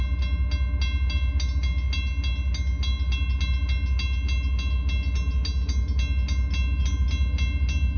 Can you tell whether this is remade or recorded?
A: recorded